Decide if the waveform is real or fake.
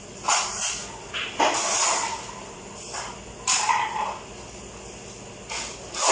real